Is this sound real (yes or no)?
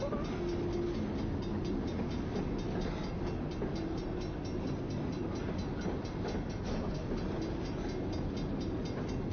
yes